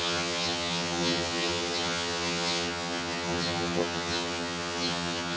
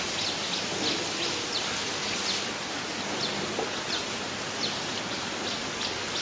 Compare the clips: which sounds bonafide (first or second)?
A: second